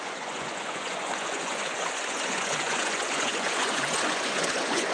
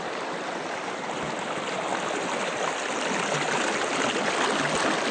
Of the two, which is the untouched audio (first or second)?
second